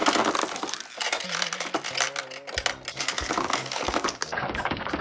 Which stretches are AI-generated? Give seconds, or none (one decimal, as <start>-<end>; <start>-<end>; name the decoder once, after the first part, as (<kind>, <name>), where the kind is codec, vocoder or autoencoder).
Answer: 3.0-5.0 (codec, DAC)

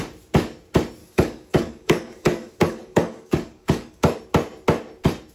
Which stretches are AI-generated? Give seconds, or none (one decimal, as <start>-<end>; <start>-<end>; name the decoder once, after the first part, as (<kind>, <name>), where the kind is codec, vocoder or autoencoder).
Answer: 1.0-4.2 (codec, DAC)

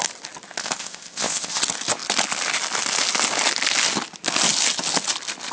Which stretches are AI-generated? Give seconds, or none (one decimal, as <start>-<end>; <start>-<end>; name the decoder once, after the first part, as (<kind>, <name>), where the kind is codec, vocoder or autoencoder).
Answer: 0.6-1.6 (codec, ZipCodec)

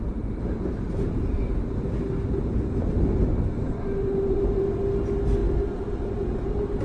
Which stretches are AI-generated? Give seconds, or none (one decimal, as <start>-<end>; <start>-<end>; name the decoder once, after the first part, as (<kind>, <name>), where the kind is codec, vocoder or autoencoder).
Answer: 3.3-4.8 (vocoder, BigVGAN v2); 5.4-6.8

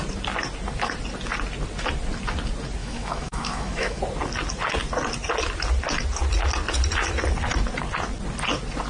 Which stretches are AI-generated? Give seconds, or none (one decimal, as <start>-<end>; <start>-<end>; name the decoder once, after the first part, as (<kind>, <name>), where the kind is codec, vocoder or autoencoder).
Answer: 2.8-4.0 (autoencoder, DAC-VAE)

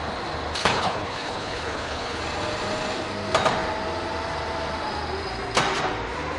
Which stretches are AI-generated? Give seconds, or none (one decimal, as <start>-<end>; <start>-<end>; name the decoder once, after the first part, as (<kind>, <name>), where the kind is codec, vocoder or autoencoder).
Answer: 0.6-2.2 (codec, HILCodec)

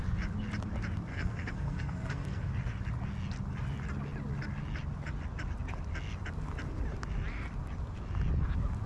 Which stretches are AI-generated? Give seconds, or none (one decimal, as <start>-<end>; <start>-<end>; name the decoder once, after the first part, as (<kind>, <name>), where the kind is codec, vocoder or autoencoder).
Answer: 1.1-2.5 (codec, SNAC)